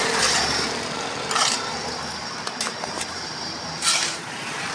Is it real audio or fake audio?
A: fake